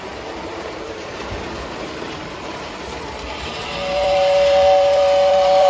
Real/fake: fake